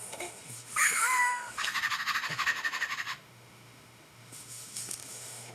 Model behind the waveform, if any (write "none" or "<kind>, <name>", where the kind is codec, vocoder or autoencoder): autoencoder, DAC-VAE